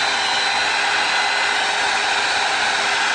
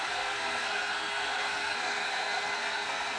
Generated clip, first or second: second